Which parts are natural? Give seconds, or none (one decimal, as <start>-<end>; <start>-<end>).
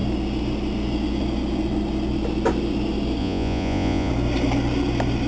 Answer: 0.0-3.2; 4.1-5.3